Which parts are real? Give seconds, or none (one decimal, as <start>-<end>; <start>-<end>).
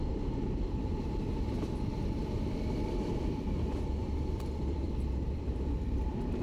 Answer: none